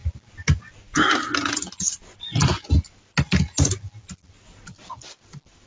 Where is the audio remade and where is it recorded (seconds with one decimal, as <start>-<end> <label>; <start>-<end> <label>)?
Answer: 0.0-5.7 recorded